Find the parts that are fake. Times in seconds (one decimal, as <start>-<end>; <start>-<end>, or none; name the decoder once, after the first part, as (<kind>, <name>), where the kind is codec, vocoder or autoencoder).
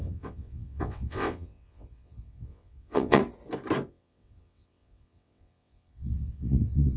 0.0-3.2 (vocoder, WaveNeXt); 3.9-7.0